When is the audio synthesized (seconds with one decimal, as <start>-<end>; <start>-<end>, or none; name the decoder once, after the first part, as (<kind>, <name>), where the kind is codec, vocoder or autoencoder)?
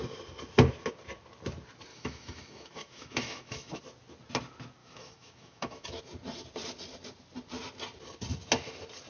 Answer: 1.9-3.8 (autoencoder, DAC-VAE); 4.8-6.0